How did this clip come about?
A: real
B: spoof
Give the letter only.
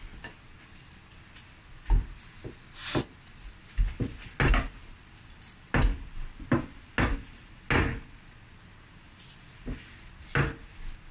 A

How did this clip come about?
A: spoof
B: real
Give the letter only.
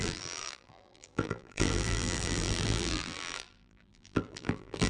A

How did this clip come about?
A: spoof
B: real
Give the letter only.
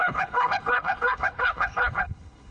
A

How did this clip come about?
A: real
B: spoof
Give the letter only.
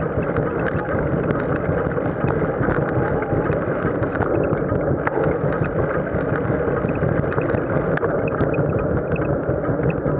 A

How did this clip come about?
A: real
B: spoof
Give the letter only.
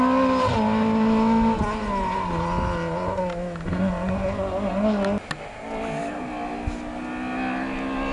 A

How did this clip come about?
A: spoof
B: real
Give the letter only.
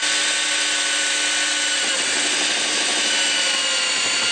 B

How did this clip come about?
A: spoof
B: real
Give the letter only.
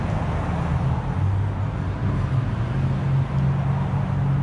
B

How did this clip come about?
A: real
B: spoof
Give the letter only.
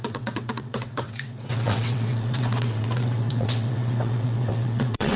B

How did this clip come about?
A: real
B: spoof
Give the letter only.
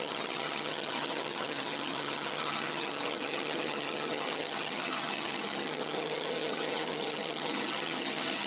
B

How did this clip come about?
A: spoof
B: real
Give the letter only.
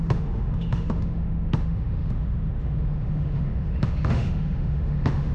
A